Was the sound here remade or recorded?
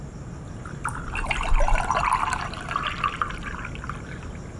recorded